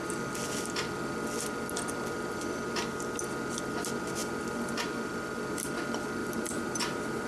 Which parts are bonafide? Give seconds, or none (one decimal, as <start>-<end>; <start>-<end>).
0.0-6.2